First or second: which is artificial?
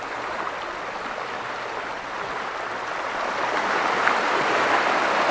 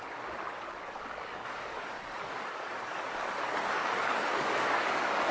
second